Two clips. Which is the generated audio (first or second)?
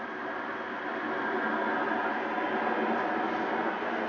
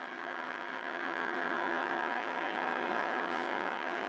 second